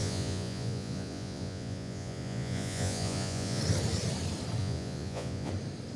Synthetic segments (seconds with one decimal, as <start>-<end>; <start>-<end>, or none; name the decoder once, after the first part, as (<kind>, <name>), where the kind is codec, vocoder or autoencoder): 0.0-3.6 (vocoder, Vocos); 4.6-5.5